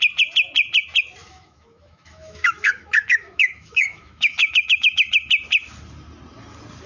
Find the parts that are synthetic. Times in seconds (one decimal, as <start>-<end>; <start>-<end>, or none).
1.2-5.3